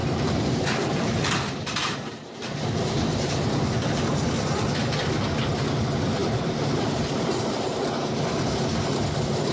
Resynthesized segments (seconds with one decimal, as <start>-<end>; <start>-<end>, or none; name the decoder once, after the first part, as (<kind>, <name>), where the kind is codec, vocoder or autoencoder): 0.0-3.8 (vocoder, BigVGAN v2); 6.2-7.4

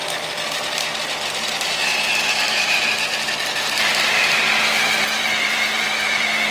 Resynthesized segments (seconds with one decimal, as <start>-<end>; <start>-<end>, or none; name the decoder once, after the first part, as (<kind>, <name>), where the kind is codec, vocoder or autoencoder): 3.9-6.5 (vocoder, BigVGAN v2)

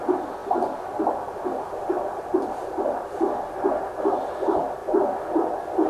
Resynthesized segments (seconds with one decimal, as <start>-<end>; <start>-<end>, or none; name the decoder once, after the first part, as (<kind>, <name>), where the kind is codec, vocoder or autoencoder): 0.4-3.9 (vocoder, BigVGAN v2); 4.8-5.9

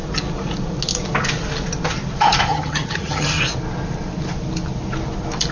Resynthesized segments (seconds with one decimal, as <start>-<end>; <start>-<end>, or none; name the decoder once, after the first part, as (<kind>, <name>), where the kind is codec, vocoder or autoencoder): 2.5-3.4 (vocoder, HiFi-GAN)

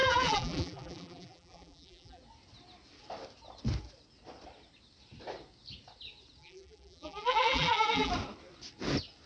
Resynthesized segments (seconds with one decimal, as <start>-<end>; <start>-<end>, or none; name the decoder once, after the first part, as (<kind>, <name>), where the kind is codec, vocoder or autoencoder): 0.0-2.2 (vocoder, BigVGAN v2); 6.4-8.1

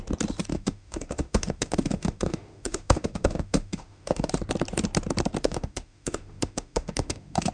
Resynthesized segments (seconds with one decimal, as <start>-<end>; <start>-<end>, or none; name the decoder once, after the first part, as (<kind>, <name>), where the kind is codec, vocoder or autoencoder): 0.5-4.3 (autoencoder, DAC-VAE); 5.4-7.5